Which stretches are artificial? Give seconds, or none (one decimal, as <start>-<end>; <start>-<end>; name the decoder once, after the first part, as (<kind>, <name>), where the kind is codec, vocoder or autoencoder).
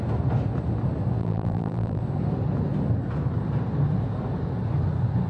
1.2-2.0 (vocoder, BigVGAN v2)